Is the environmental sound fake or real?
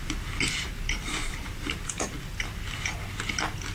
fake